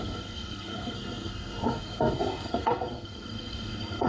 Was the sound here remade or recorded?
remade